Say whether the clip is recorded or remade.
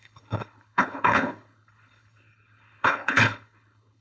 remade